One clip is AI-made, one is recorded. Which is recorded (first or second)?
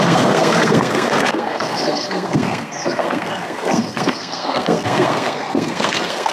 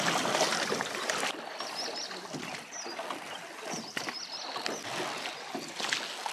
second